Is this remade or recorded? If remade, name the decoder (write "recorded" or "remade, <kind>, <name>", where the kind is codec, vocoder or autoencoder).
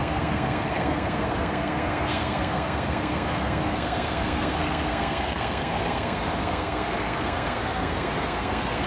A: remade, codec, SNAC